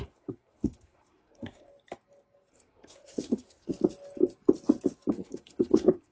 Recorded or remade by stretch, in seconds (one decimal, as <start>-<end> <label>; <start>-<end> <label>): 0.0-1.7 remade; 1.7-2.5 recorded; 2.5-3.7 remade; 3.7-5.1 recorded; 5.1-6.1 remade